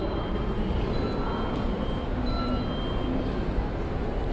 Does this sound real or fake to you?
real